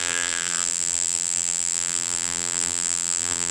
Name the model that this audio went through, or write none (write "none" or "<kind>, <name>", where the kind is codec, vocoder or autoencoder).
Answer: vocoder, BigVGAN v2